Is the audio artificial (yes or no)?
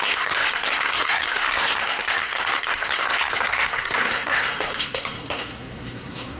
yes